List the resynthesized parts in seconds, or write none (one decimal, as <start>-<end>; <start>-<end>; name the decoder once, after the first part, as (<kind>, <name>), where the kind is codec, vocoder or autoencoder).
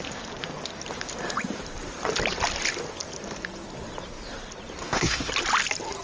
4.8-5.3 (codec, SNAC)